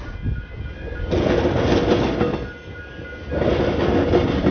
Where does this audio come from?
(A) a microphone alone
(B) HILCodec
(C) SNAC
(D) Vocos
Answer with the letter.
A